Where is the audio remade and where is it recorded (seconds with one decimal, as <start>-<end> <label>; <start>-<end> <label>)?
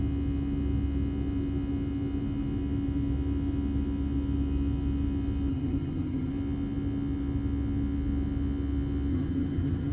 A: 0.0-5.5 recorded; 5.5-6.3 remade; 6.3-9.1 recorded; 9.1-9.9 remade